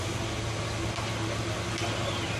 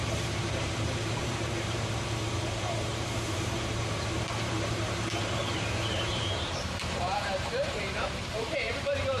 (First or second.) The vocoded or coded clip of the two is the second